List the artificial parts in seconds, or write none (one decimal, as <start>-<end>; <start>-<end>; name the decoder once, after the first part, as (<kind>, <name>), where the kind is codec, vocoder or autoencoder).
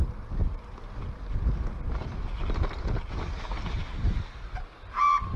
none